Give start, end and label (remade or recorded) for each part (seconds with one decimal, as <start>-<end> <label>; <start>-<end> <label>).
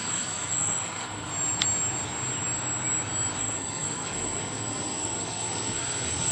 0.0-1.3 remade; 1.3-3.4 recorded; 3.4-6.3 remade